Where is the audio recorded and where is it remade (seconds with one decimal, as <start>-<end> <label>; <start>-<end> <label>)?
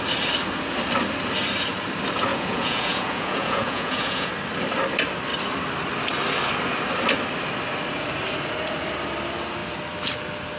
0.0-2.3 recorded; 2.3-4.3 remade; 4.3-10.6 recorded